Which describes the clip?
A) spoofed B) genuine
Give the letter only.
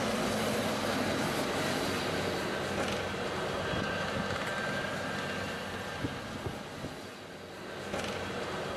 B